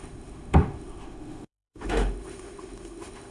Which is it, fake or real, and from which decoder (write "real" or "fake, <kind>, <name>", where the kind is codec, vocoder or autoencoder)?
fake, autoencoder, DAC-VAE